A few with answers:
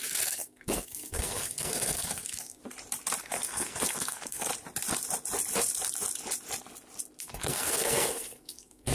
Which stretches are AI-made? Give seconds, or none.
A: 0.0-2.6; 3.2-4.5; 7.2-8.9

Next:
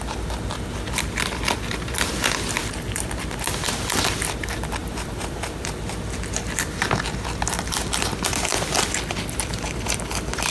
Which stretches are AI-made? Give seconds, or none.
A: 4.8-5.8

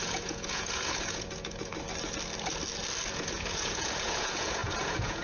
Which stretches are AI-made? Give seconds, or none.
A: 0.0-1.7; 3.1-5.2